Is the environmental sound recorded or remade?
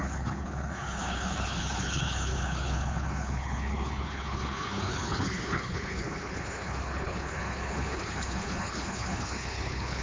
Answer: remade